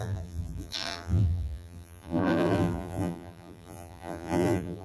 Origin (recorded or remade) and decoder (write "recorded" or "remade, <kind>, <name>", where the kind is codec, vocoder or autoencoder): remade, vocoder, BigVGAN v2